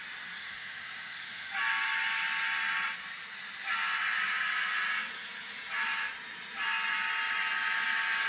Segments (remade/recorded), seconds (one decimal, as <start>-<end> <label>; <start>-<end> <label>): 0.0-0.4 recorded; 0.4-1.5 remade; 1.5-8.3 recorded